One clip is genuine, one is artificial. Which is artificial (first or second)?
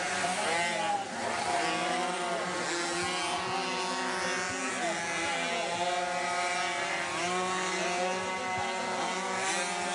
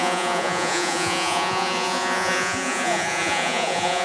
second